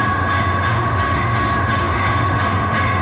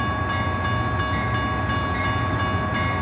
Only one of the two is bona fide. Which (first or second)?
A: second